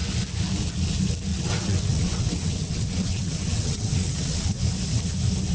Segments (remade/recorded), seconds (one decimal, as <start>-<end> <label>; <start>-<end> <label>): 0.0-1.3 recorded; 1.3-4.6 remade; 4.6-5.5 recorded